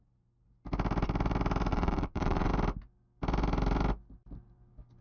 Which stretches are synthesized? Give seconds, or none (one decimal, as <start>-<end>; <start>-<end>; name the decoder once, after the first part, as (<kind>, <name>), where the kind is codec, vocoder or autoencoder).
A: 1.7-2.5 (vocoder, WaveNeXt)